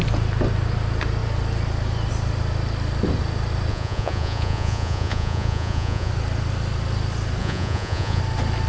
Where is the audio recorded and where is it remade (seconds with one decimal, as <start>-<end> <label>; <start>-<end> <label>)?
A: 0.0-3.7 recorded; 3.7-6.1 remade; 6.1-7.4 recorded; 7.4-8.2 remade; 8.2-8.7 recorded

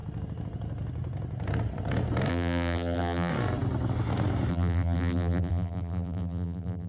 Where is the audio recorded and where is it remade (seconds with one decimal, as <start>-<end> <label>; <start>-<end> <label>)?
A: 0.0-2.3 recorded; 2.3-3.3 remade; 3.3-4.5 recorded; 4.5-6.9 remade

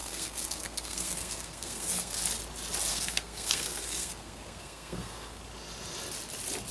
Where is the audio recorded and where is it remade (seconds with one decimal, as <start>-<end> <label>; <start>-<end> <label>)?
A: 0.0-2.2 remade; 2.2-2.9 recorded; 2.9-5.4 remade; 5.4-6.7 recorded